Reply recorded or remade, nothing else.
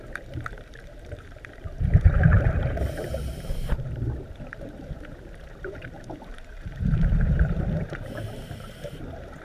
remade